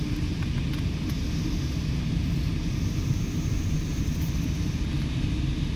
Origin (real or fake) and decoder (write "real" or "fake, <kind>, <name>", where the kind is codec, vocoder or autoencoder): real